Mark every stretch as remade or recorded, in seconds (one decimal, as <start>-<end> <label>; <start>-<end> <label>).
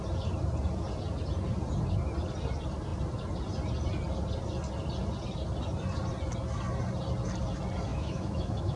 0.0-7.9 recorded; 7.9-8.8 remade